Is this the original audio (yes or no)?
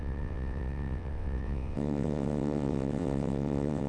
no